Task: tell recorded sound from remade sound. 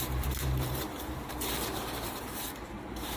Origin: remade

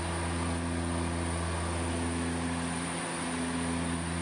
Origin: recorded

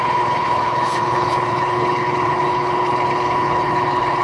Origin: remade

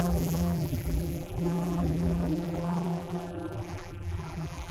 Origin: remade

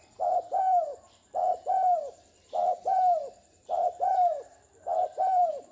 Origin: remade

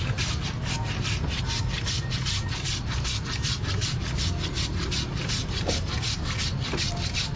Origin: recorded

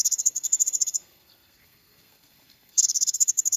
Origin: remade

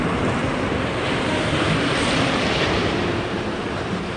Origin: remade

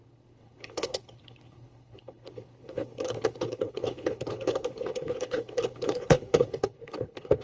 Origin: remade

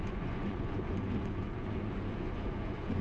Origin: remade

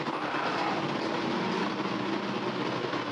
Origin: recorded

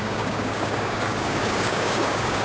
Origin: remade